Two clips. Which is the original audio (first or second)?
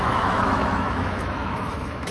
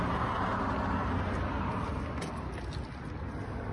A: second